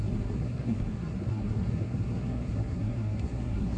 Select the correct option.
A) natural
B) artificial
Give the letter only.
B